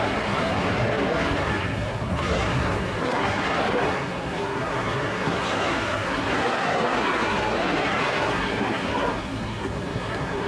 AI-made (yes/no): yes